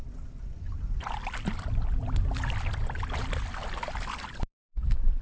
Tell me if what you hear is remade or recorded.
remade